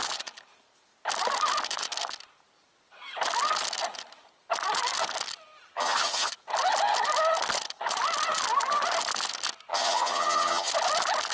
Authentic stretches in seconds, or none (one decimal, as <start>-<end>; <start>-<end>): 0.0-5.7; 6.3-9.7; 10.7-11.3